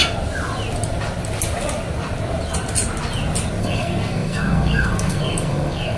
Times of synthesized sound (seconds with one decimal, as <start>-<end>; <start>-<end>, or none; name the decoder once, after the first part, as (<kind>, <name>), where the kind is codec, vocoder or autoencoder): 3.6-6.0 (codec, SNAC)